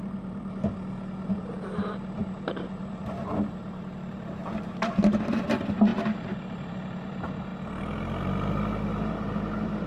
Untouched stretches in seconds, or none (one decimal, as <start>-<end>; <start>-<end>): 7.5-9.2